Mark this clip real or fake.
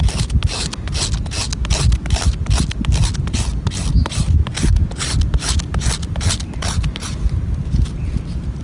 real